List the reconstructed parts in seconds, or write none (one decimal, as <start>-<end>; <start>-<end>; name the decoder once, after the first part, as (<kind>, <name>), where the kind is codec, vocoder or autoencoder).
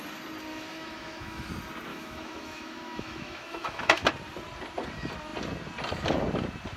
0.5-1.5 (autoencoder, DAC-VAE); 1.9-4.1